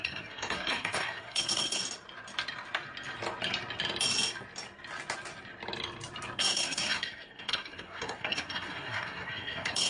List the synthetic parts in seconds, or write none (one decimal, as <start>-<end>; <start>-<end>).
0.0-1.8; 6.4-9.9